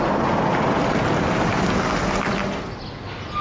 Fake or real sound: real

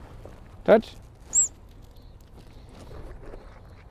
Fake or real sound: real